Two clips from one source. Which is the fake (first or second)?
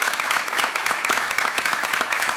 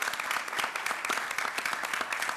first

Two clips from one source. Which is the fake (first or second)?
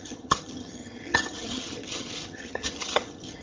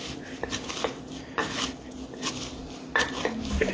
first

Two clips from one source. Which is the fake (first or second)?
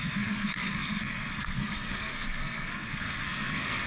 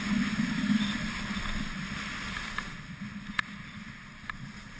first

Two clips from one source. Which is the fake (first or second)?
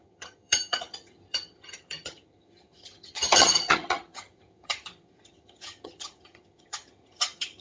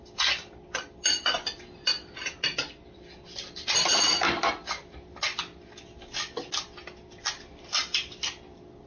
first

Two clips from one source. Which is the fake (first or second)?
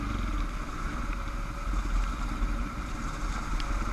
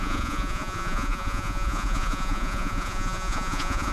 second